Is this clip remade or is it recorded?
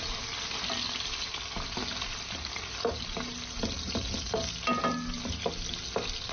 recorded